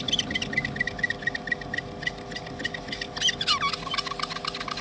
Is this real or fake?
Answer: real